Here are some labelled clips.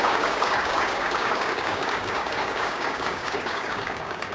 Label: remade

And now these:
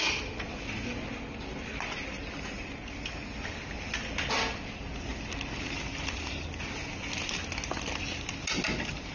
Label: recorded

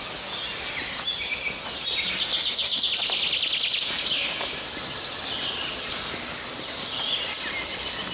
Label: recorded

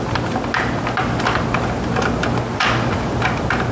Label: recorded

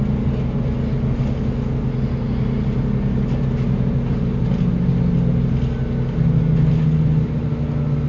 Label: recorded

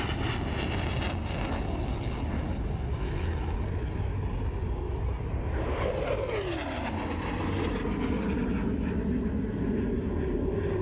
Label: recorded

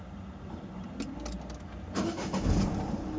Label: recorded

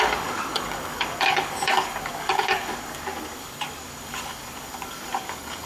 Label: remade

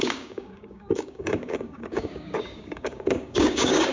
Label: remade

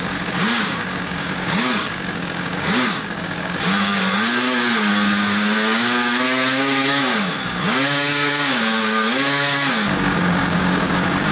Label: remade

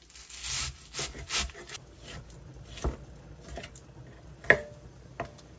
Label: recorded